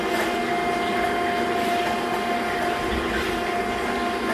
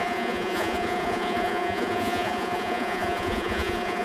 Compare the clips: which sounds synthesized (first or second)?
second